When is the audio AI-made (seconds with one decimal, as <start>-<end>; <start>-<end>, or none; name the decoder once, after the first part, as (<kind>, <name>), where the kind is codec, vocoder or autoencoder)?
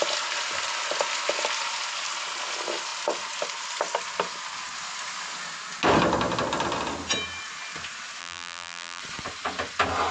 8.2-9.0 (vocoder, BigVGAN v2)